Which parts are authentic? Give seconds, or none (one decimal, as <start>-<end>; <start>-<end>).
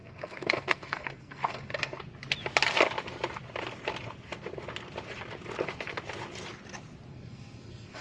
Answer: 2.0-7.1